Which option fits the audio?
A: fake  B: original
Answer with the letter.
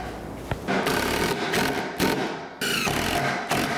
B